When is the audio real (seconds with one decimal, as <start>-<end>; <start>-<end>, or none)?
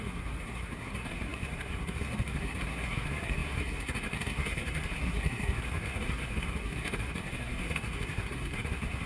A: none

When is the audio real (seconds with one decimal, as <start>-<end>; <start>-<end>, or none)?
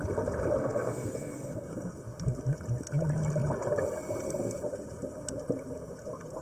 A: 0.0-0.6; 1.9-6.4